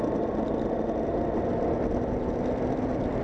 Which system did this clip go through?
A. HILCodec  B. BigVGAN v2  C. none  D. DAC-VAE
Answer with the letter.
C